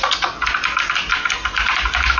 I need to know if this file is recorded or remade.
recorded